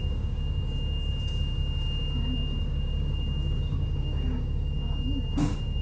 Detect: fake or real fake